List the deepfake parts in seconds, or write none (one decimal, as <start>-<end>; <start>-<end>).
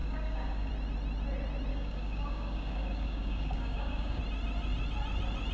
0.0-0.7; 1.7-4.2